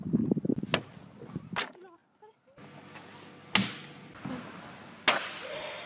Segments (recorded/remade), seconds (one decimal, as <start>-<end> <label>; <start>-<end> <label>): 0.0-5.9 recorded